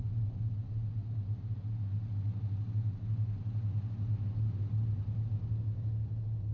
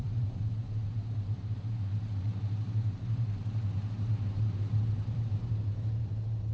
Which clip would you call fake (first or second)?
second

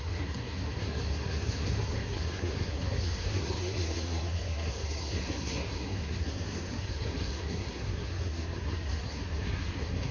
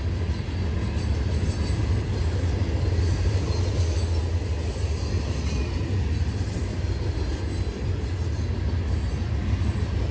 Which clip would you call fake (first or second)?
first